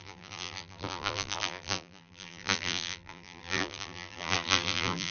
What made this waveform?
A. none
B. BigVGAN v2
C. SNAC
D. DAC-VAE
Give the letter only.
B